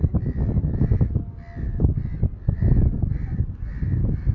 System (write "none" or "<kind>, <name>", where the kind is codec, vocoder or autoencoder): none